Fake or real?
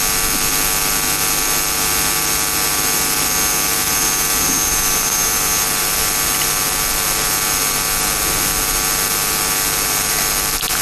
real